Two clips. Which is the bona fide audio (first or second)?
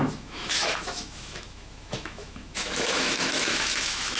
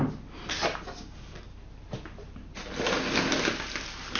second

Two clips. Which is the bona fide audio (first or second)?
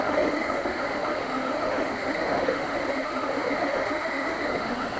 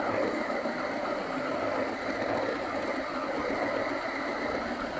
second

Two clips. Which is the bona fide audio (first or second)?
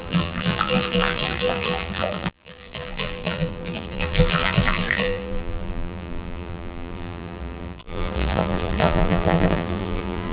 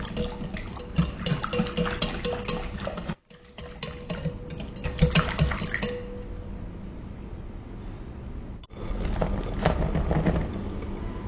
second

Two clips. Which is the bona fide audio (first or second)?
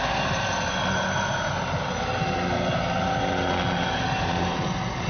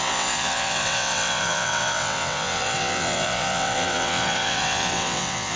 first